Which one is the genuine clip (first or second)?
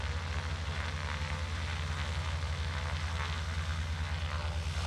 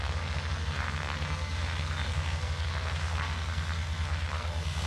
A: first